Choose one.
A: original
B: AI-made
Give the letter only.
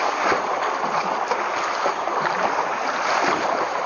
B